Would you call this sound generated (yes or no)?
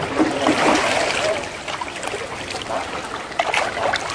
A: no